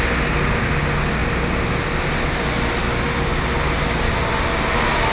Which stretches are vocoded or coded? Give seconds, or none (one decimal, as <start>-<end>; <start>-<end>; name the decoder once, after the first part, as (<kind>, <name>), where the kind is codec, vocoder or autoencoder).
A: none